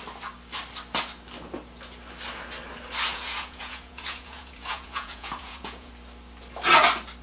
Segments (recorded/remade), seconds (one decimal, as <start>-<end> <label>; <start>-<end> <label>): 0.0-3.1 recorded; 3.1-5.9 remade; 5.9-7.2 recorded